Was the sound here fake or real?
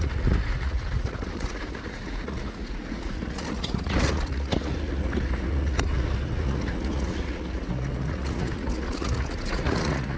fake